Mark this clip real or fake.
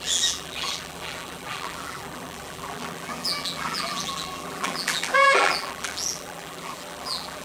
fake